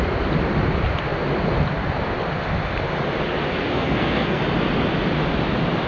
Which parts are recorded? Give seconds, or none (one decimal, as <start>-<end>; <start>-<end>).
0.0-3.6; 4.4-5.9